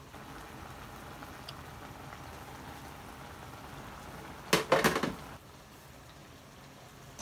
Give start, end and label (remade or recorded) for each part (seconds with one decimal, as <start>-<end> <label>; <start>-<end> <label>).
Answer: 0.0-7.2 recorded